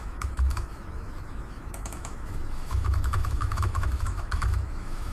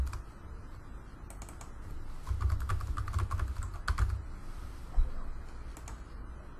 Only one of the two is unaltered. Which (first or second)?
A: second